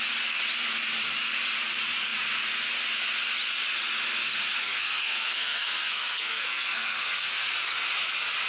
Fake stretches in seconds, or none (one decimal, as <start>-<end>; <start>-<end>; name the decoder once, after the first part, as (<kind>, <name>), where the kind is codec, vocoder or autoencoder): 4.6-7.5 (codec, SNAC)